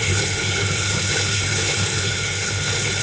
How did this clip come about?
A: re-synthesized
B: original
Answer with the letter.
A